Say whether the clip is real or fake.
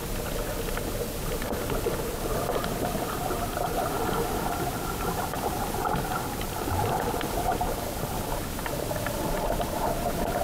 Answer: real